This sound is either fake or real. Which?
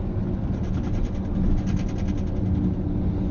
real